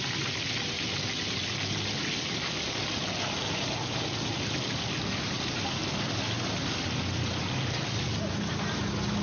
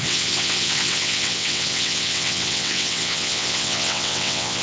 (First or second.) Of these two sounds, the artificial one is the second